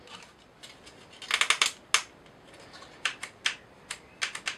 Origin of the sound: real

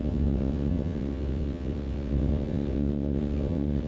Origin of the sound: fake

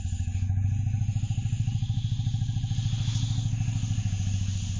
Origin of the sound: real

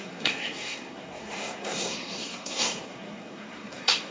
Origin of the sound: fake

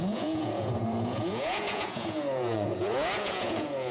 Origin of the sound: fake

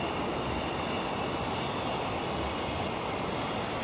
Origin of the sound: real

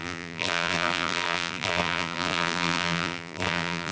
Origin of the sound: fake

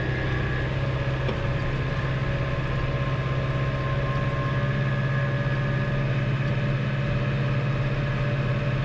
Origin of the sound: real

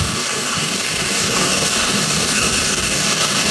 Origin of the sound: fake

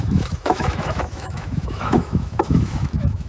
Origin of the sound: fake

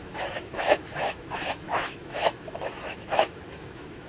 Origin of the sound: fake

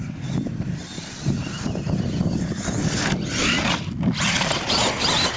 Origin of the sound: real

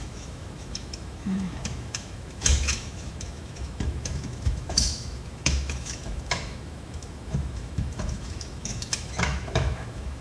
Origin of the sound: fake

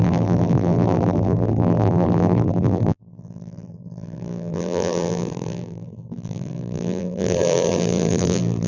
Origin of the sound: fake